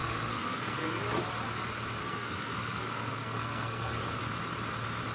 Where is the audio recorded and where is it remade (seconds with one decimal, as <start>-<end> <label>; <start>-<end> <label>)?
0.0-1.0 remade; 1.0-2.0 recorded; 2.0-4.2 remade; 4.2-5.1 recorded